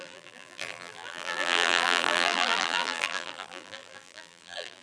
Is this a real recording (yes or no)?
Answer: no